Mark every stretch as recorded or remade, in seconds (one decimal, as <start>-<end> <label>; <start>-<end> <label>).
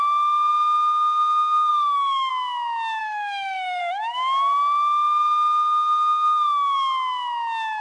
0.0-1.7 recorded; 1.7-2.3 remade; 2.3-3.0 recorded; 3.0-3.8 remade; 3.8-7.8 recorded